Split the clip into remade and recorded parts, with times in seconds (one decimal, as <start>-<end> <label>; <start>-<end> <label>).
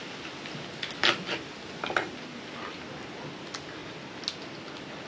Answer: 0.0-5.1 recorded